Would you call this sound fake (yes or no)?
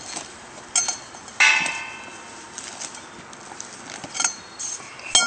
no